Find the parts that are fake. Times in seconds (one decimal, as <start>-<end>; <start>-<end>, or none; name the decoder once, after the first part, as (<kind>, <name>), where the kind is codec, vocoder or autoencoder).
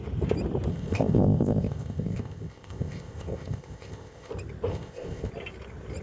0.7-4.3 (codec, ZipCodec); 4.7-5.3